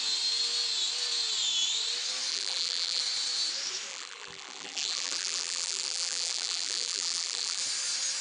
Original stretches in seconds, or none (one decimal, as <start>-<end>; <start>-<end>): 0.0-2.3; 3.0-3.9; 7.6-8.2